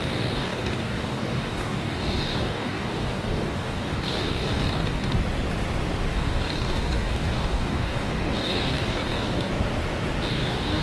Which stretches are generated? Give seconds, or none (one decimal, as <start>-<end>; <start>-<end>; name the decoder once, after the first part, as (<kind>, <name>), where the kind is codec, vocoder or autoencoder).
0.0-5.1 (codec, DAC); 6.1-9.5; 10.3-10.8

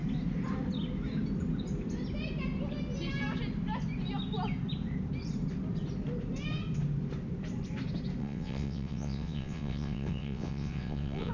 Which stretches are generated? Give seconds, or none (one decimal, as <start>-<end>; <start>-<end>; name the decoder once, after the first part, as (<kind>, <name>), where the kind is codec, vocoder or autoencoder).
8.2-11.3 (vocoder, WaveNeXt)